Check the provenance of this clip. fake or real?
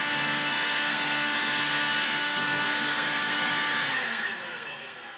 fake